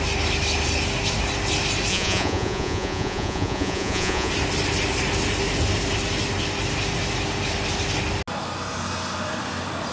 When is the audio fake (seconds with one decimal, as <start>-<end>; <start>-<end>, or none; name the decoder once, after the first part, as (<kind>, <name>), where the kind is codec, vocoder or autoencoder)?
1.9-4.3 (vocoder, Vocos)